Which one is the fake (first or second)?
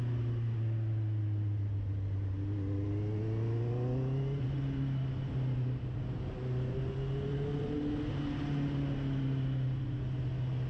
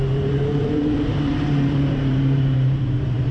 second